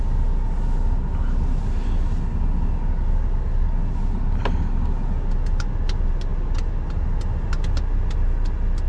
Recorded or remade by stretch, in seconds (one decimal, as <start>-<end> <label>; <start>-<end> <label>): 0.0-8.9 recorded